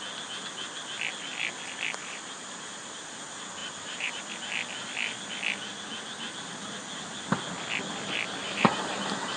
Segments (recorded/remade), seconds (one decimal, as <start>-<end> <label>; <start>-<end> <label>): 0.0-2.0 recorded; 2.0-3.2 remade; 3.2-3.6 recorded; 3.6-4.2 remade; 4.2-8.4 recorded; 8.4-9.4 remade